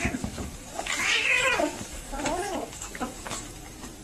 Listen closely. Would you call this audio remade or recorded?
remade